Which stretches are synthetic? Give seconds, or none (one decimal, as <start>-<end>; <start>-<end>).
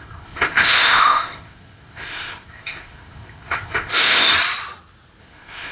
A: 0.0-4.3; 5.2-5.7